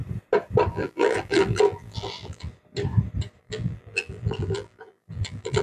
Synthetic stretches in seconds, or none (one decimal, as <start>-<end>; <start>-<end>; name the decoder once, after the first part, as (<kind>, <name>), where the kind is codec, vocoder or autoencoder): 0.7-2.5 (vocoder, BigVGAN v2); 3.4-5.6